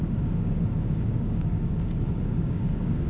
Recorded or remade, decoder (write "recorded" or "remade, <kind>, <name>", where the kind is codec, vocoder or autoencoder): remade, codec, DAC